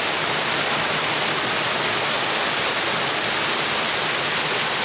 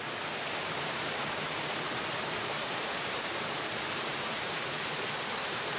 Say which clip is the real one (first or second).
first